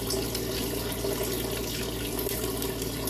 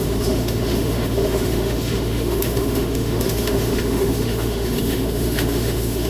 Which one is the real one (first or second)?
first